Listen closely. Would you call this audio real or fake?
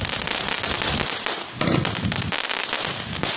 real